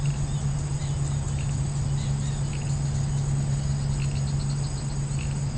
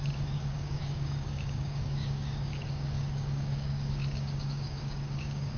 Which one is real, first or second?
first